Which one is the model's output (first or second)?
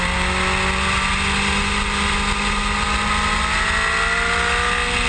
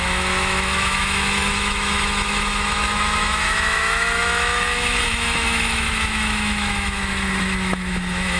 second